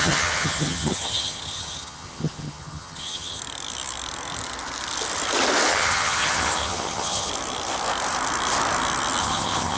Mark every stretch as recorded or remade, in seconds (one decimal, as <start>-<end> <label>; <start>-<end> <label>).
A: 0.0-3.4 remade; 3.4-5.7 recorded; 5.7-7.3 remade; 7.3-9.2 recorded; 9.2-9.8 remade